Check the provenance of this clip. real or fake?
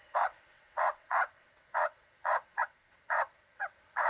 fake